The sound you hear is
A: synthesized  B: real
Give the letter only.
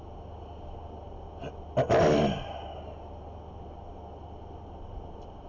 B